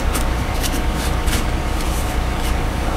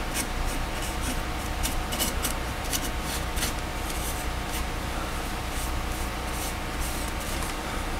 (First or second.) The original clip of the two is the second